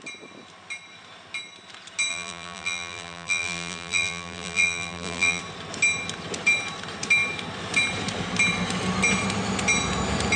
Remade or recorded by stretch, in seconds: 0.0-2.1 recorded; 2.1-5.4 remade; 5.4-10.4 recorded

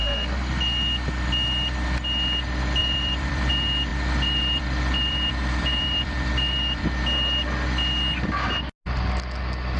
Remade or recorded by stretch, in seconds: 0.0-2.8 recorded; 2.8-3.5 remade; 3.5-3.9 recorded; 3.9-7.0 remade; 7.0-9.8 recorded

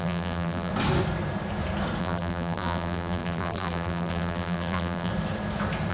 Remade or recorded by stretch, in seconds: 0.0-0.7 remade; 0.7-2.0 recorded; 2.0-5.1 remade; 5.1-5.9 recorded

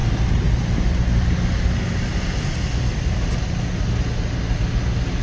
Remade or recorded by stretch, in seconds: 0.0-3.1 remade; 3.1-5.2 recorded

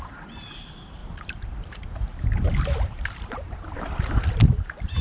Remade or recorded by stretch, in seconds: 0.0-1.0 recorded; 1.0-4.0 remade; 4.0-5.0 recorded

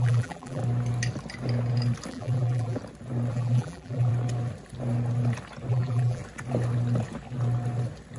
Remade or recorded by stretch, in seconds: 0.0-0.6 remade; 0.6-2.1 recorded; 2.1-2.8 remade; 2.8-3.3 recorded; 3.3-4.1 remade; 4.1-5.7 recorded; 5.7-6.2 remade; 6.2-8.2 recorded

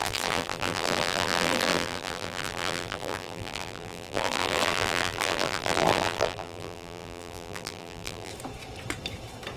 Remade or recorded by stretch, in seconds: 0.0-8.3 remade; 8.3-9.6 recorded

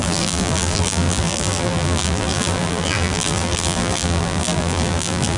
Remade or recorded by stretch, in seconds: 0.0-5.4 remade